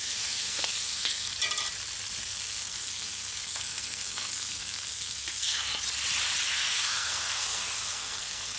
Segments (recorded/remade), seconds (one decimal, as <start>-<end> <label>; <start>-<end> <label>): 0.0-1.3 remade; 1.3-2.2 recorded; 2.2-5.7 remade; 5.7-6.5 recorded; 6.5-8.6 remade